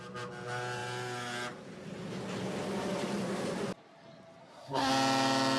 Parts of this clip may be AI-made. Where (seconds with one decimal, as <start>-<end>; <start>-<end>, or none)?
4.4-4.9